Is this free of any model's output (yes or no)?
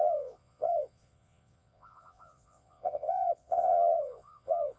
no